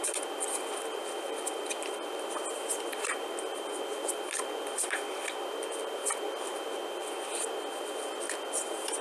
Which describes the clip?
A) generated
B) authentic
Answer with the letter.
B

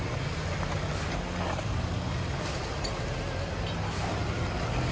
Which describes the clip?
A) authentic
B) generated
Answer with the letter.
A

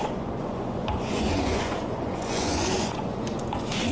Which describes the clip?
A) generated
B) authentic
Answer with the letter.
A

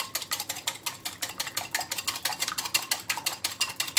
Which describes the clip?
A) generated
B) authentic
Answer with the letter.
B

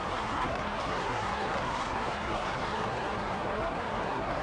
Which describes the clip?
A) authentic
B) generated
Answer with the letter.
B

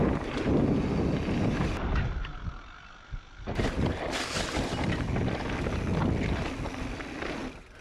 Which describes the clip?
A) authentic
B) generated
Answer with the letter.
A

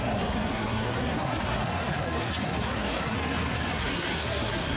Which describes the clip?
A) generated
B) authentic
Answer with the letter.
A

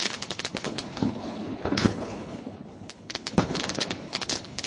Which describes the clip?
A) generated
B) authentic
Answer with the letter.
A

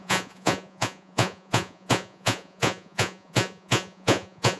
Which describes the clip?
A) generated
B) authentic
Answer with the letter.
A